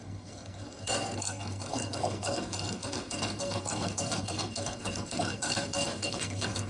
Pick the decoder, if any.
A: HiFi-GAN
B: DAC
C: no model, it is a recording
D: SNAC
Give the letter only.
D